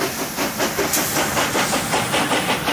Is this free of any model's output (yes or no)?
yes